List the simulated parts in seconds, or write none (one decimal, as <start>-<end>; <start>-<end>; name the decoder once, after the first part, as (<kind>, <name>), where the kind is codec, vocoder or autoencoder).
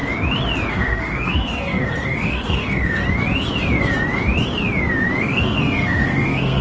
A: 0.7-3.0 (codec, SNAC); 5.2-6.6